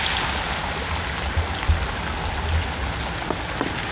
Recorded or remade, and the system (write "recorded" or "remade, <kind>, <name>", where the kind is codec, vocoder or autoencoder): recorded